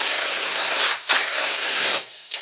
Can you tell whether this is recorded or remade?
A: remade